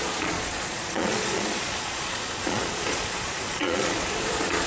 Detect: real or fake fake